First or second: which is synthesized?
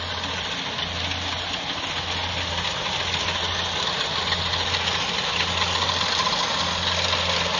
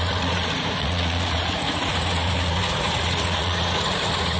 second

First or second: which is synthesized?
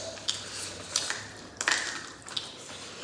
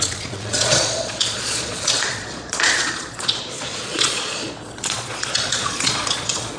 second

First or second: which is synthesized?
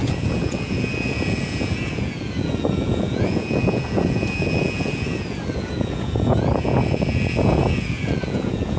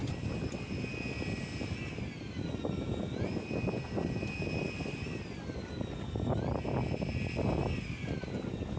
first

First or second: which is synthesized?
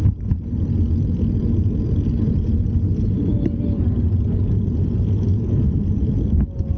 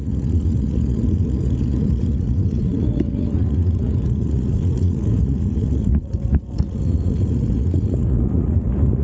second